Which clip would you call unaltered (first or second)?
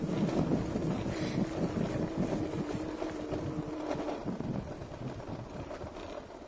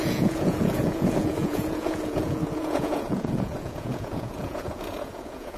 first